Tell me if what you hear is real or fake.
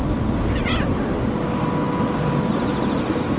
real